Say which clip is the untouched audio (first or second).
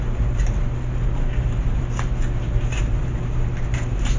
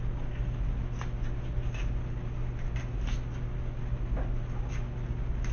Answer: second